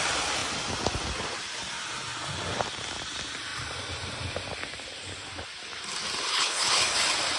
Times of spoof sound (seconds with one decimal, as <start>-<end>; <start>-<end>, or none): 6.3-6.8